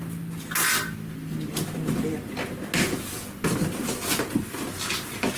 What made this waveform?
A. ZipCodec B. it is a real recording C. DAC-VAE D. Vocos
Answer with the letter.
B